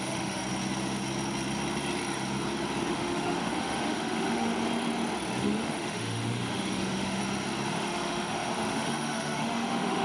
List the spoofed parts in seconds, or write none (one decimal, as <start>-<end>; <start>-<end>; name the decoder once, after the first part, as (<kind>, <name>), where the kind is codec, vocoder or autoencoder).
0.0-0.4 (autoencoder, DAC-VAE); 2.9-4.5; 5.4-7.2; 7.7-10.0